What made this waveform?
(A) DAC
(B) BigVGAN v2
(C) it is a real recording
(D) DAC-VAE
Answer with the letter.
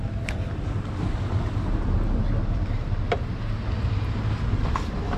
C